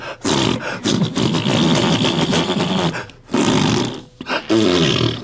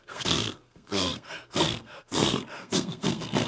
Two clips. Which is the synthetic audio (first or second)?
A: second